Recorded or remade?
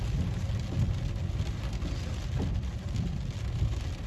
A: recorded